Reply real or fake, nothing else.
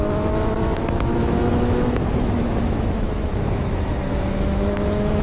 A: fake